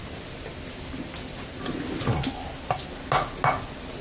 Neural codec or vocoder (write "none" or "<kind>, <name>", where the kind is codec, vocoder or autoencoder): none